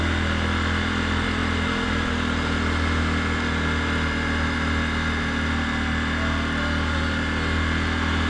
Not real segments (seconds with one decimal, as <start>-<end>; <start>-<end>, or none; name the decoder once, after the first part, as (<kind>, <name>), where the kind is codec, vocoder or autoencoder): none